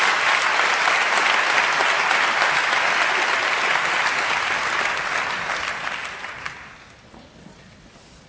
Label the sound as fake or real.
real